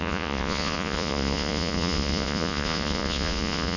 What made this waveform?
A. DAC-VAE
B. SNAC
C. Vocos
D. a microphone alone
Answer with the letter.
C